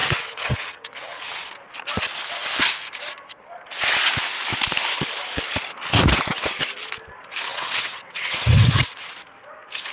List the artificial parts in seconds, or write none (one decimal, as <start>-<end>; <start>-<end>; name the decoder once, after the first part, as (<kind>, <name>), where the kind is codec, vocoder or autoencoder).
0.0-1.5 (vocoder, WaveNeXt); 7.5-9.1